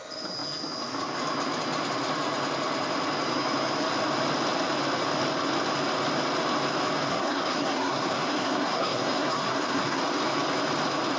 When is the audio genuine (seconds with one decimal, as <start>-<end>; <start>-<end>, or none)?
0.0-7.1; 10.0-11.2